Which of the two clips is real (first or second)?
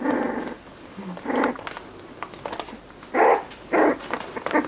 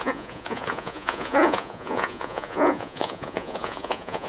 first